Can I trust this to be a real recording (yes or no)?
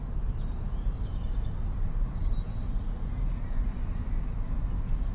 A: yes